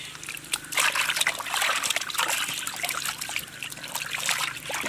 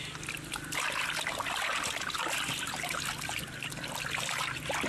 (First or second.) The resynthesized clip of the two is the first